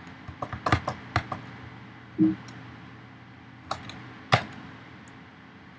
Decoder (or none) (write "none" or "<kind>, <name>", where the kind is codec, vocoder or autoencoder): none